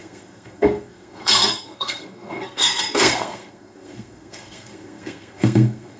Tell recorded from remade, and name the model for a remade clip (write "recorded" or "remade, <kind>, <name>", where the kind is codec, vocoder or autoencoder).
remade, codec, SNAC